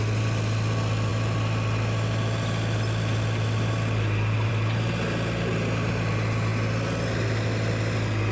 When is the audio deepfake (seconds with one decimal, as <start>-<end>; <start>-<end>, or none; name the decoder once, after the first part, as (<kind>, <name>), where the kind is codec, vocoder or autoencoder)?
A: none